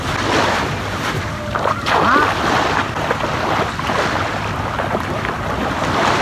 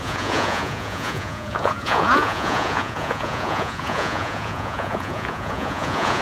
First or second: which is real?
first